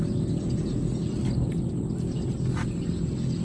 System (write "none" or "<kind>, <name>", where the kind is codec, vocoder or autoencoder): none